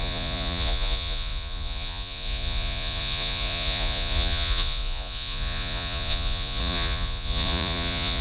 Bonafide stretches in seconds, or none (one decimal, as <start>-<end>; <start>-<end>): none